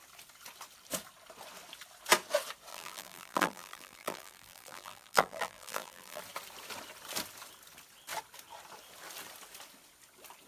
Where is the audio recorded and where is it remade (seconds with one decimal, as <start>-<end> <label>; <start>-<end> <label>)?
0.0-2.7 recorded; 2.7-6.2 remade; 6.2-10.5 recorded